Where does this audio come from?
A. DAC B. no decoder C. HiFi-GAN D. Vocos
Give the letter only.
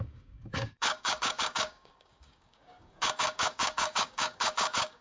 A